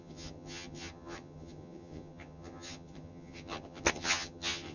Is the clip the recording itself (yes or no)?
no